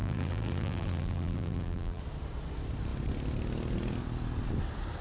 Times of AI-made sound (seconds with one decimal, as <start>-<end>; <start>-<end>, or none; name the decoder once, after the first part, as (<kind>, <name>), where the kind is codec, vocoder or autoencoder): 0.0-2.0 (vocoder, BigVGAN v2)